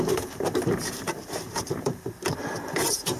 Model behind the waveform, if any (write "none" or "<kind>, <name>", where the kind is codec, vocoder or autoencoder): vocoder, BigVGAN v2